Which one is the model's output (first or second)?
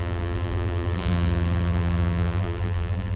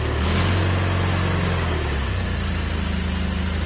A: first